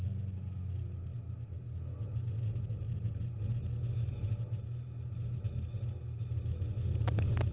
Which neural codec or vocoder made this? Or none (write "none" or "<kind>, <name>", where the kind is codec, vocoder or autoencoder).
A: none